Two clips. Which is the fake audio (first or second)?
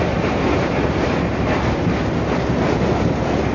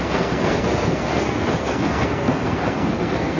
second